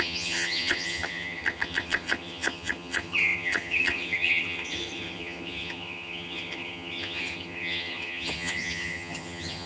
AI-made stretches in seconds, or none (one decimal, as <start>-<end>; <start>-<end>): 0.0-9.7